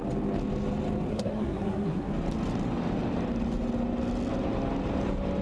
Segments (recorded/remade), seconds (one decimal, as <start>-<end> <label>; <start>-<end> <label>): 0.0-1.1 recorded; 1.1-2.1 remade; 2.1-5.4 recorded